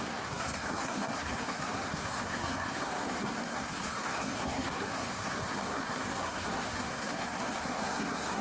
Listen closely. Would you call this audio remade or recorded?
remade